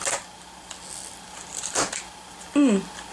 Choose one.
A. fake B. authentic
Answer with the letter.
B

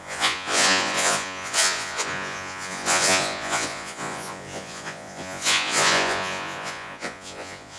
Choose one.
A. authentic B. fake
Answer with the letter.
B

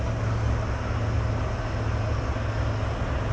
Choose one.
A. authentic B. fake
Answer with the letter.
A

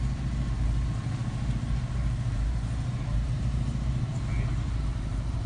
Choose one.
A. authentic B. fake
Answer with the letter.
B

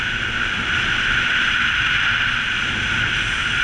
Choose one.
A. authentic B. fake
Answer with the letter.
A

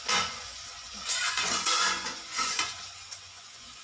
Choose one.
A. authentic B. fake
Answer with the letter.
B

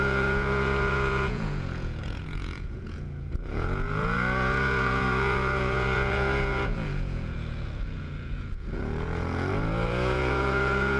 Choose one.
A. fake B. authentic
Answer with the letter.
A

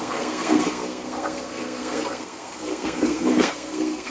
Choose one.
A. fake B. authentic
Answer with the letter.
A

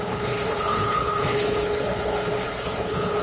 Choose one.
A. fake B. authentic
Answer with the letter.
A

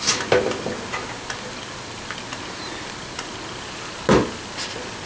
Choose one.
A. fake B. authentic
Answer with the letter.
B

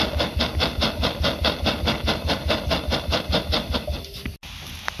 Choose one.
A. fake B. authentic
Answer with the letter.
B